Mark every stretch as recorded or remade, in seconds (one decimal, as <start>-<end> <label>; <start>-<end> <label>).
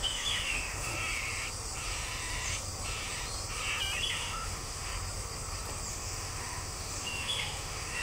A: 0.0-0.9 remade; 0.9-4.1 recorded; 4.1-4.9 remade; 4.9-5.9 recorded; 5.9-8.0 remade